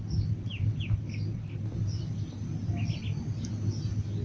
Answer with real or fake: real